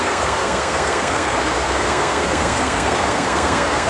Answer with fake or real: fake